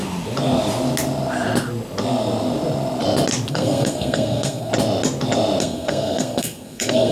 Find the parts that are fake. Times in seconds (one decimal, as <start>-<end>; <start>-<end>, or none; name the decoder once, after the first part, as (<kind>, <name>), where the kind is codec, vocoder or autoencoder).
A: 3.5-4.7 (codec, SNAC); 5.6-7.1